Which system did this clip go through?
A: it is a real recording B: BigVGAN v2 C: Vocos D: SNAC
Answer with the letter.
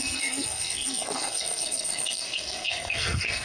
D